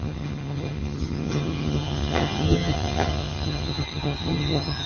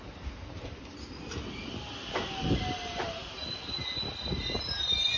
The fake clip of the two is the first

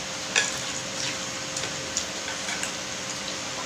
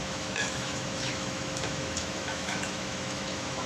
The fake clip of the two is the second